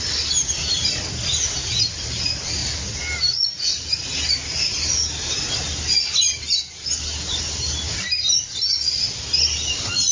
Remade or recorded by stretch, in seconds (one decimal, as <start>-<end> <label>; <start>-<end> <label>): 0.0-10.1 recorded